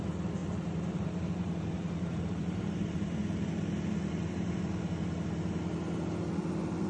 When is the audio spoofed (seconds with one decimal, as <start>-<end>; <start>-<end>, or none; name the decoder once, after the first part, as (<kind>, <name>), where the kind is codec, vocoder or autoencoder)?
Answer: 0.4-4.5 (vocoder, BigVGAN v2)